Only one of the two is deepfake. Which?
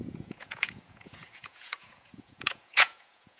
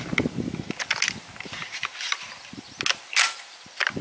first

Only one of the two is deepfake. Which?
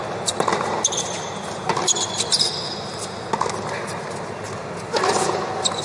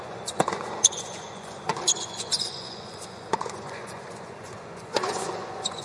second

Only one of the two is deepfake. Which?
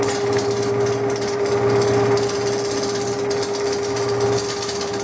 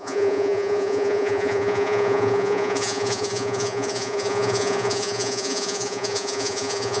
second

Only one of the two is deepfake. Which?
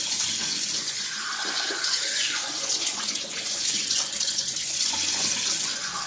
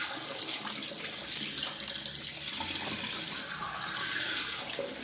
first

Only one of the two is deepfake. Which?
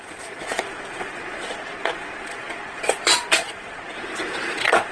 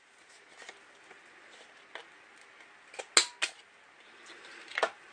first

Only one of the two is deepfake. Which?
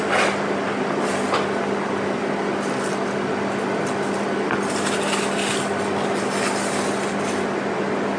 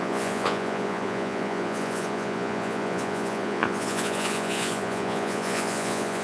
second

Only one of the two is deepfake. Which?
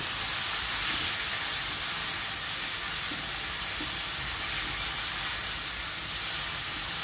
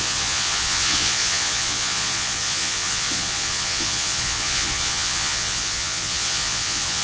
second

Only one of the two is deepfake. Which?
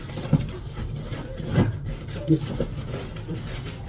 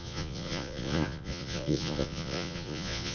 second